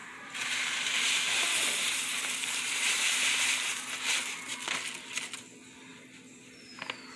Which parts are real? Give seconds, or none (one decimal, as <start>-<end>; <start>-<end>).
3.2-7.2